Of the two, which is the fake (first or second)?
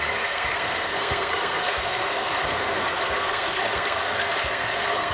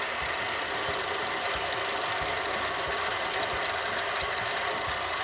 first